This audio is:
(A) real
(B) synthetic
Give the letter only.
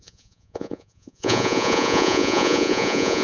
B